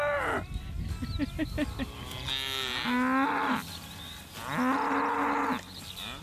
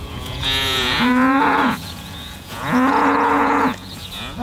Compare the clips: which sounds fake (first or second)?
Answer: second